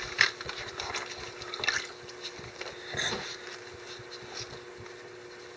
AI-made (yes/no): no